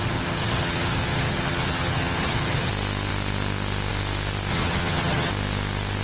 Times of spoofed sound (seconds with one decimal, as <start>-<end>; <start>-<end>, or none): 0.0-2.7; 4.5-5.3